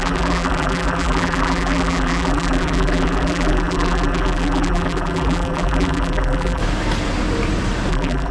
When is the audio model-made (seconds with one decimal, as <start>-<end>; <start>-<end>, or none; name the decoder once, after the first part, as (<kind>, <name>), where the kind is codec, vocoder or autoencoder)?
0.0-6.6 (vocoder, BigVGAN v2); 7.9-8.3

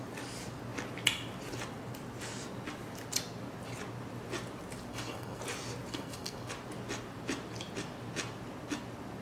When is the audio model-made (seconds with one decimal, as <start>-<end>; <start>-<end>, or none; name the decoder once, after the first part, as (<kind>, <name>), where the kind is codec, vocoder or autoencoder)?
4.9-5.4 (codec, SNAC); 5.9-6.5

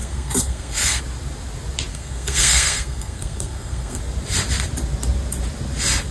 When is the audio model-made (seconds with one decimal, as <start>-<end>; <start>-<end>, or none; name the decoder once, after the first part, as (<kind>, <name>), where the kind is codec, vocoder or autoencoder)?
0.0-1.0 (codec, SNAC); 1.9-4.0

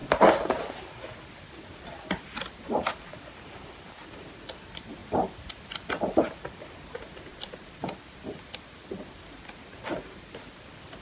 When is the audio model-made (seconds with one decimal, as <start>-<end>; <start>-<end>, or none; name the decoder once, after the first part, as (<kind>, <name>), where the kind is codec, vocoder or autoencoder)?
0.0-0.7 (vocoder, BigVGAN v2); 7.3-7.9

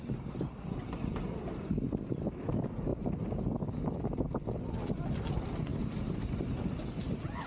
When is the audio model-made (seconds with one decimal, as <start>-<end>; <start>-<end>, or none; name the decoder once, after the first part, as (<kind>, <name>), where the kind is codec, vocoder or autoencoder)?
none

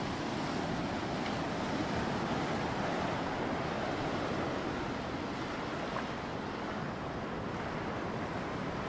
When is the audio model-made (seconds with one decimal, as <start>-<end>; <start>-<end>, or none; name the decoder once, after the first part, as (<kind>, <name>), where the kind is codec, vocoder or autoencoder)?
1.8-2.4 (vocoder, BigVGAN v2)

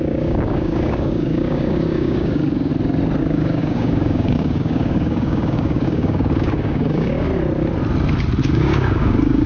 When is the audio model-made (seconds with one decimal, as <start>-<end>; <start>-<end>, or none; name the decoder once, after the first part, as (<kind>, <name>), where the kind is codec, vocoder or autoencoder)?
0.0-2.7 (codec, DAC); 3.2-7.3; 8.4-9.5